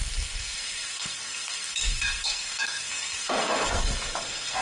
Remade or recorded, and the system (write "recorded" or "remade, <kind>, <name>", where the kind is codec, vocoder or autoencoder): remade, codec, SNAC